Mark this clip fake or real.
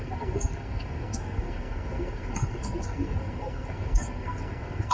fake